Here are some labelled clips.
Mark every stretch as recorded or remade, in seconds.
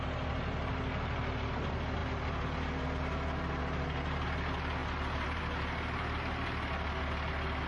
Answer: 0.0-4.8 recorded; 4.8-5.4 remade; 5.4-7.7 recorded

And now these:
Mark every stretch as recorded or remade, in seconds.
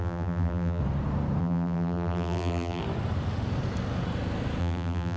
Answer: 0.0-0.8 remade; 0.8-1.4 recorded; 1.4-2.8 remade; 2.8-4.6 recorded; 4.6-5.2 remade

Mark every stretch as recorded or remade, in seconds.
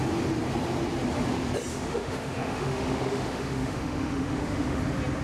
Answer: 0.0-1.7 recorded; 1.7-4.8 remade; 4.8-5.2 recorded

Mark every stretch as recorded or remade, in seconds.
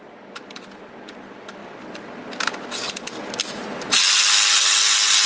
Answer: 0.0-5.3 recorded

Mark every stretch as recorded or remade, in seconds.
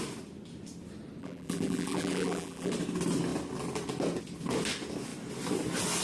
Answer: 0.0-1.2 recorded; 1.2-2.7 remade; 2.7-6.0 recorded